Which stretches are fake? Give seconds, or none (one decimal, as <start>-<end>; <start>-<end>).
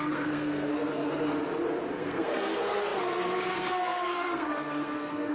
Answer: 0.0-0.7; 1.9-5.3